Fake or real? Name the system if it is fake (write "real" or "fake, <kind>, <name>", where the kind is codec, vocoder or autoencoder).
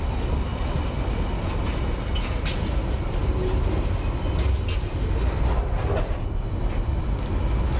real